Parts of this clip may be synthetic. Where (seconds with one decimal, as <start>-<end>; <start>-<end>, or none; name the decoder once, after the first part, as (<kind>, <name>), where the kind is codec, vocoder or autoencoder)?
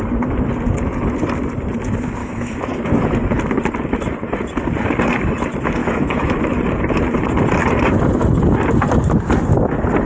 2.2-3.1 (autoencoder, DAC-VAE); 5.8-6.4